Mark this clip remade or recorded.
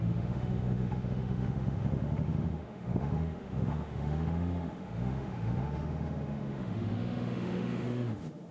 remade